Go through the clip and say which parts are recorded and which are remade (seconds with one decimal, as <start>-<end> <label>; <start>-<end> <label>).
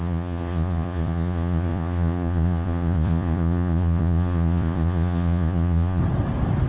0.0-6.0 remade; 6.0-6.7 recorded